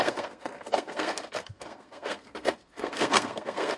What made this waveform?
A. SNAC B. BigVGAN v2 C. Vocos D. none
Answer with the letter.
A